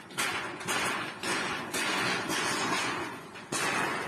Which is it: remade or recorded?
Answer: remade